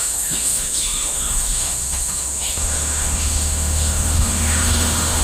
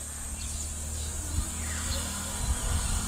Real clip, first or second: second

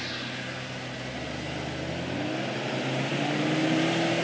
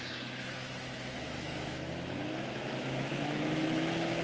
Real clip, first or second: first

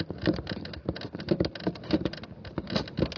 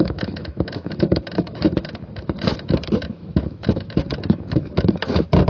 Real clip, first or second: first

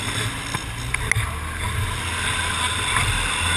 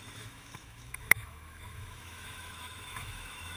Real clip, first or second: first